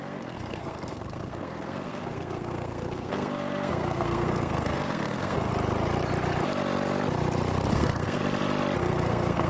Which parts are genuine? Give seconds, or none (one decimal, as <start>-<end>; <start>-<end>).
5.5-7.7; 8.2-8.8